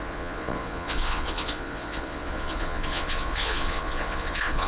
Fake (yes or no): yes